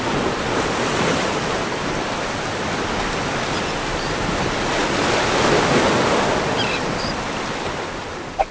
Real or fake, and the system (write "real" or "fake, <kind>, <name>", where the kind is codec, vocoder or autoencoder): real